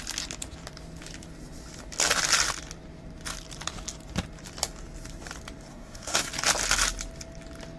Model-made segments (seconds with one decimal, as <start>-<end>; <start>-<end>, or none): 5.7-6.3